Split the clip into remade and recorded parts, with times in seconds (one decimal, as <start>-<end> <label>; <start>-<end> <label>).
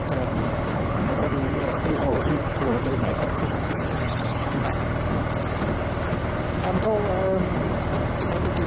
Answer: 0.0-0.7 recorded; 0.7-4.6 remade; 4.6-8.7 recorded